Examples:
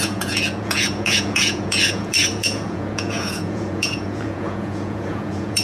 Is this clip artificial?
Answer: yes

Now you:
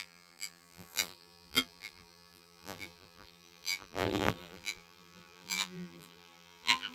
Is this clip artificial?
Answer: yes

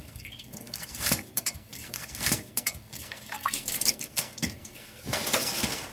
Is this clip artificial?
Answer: yes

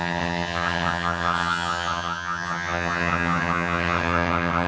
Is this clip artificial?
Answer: yes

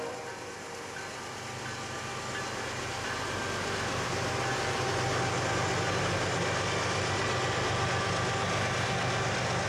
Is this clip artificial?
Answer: no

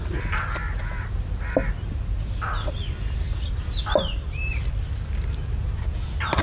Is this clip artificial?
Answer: no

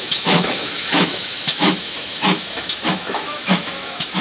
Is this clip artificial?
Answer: yes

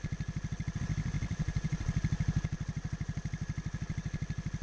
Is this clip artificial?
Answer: no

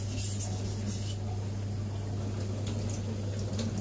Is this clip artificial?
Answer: no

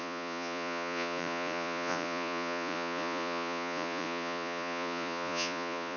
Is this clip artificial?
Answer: yes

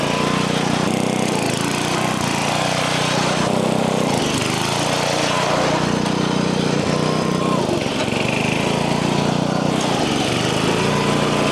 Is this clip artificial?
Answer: no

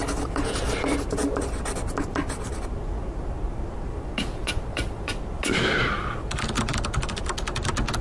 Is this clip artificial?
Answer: no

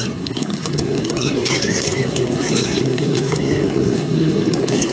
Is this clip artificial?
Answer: yes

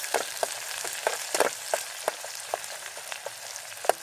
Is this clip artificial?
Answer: yes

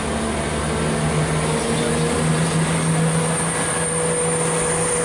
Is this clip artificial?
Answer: no